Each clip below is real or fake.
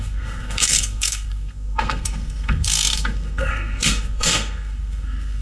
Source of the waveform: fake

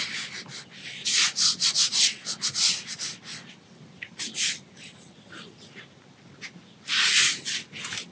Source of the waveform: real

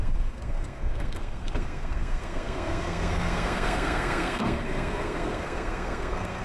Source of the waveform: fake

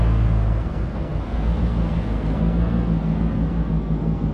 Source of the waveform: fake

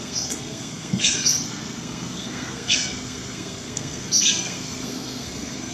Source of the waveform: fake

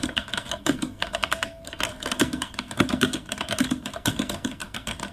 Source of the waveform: fake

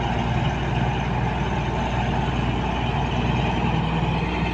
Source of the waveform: real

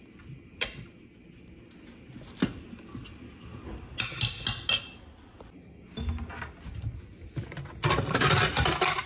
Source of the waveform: real